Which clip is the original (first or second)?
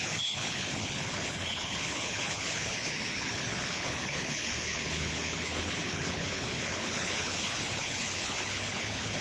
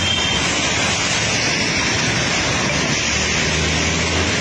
second